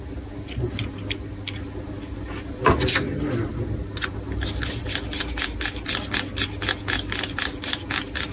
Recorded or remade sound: recorded